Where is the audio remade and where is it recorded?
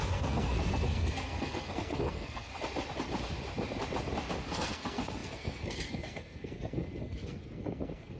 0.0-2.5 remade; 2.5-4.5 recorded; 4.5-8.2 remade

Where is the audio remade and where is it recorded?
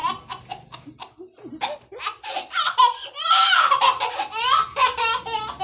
0.0-5.6 recorded